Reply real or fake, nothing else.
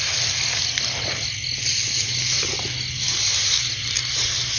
real